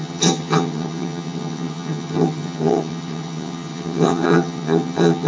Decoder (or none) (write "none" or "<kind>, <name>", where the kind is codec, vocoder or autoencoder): vocoder, HiFi-GAN